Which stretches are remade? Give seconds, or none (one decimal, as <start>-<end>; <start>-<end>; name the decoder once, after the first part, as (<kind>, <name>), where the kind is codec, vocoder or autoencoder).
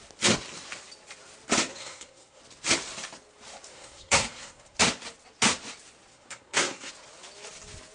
1.7-2.4 (codec, SNAC); 3.7-4.8; 6.1-6.9